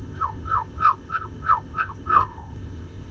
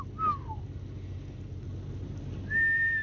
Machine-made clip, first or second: first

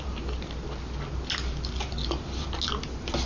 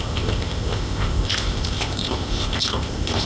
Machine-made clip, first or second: second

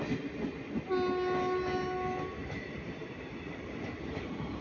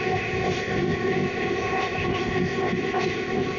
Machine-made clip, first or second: second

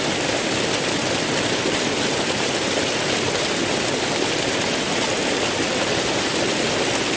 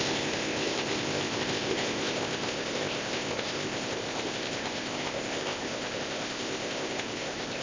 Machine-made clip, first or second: second